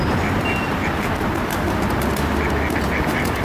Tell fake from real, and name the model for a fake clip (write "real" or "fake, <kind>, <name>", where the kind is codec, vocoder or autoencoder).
real